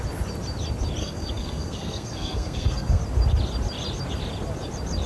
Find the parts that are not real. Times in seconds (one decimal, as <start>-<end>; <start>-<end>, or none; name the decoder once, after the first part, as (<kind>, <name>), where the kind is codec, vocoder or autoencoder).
1.0-3.0 (codec, SNAC)